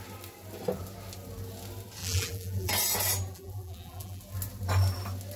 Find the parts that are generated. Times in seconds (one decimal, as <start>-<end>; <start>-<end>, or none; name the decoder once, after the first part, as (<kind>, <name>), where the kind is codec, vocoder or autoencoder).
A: 2.0-2.7 (vocoder, BigVGAN v2); 3.3-4.2

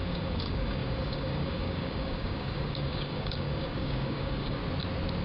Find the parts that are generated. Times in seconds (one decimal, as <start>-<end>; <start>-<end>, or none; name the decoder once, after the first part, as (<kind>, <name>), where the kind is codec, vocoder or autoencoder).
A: 0.0-4.6 (codec, DAC)